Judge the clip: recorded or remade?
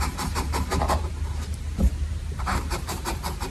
remade